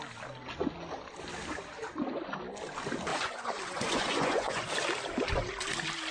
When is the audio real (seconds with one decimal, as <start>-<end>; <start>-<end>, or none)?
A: 0.0-3.1; 4.7-6.1